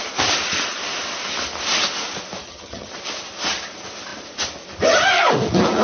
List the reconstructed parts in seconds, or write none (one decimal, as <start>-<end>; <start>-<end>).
2.4-2.9